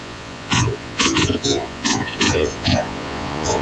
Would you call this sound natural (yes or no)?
no